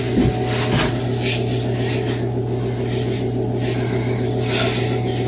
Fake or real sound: real